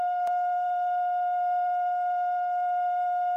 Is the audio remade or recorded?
remade